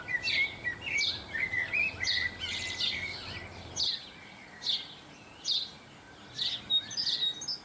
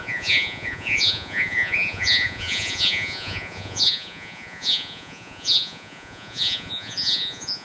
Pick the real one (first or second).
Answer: first